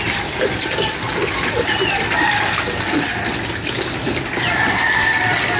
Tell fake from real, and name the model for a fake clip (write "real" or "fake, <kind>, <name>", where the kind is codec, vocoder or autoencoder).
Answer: fake, vocoder, BigVGAN v2